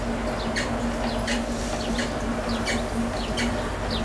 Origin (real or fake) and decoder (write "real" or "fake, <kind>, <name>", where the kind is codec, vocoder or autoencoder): real